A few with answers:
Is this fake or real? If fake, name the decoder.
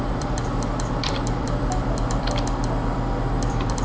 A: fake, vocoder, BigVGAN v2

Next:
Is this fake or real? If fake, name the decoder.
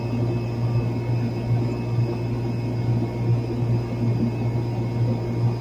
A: real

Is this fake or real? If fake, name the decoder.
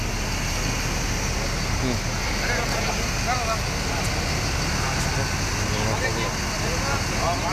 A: real